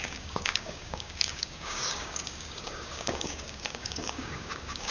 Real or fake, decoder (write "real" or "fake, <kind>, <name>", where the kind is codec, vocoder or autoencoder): fake, codec, DAC